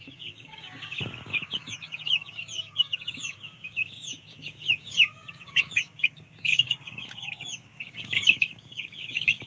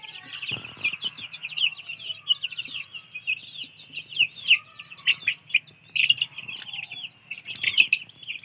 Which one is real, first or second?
second